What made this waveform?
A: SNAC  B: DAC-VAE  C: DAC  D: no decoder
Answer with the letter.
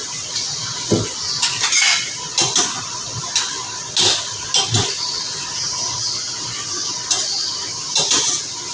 D